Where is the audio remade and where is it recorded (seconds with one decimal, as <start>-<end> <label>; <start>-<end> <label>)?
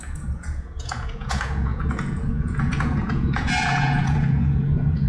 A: 0.0-5.1 remade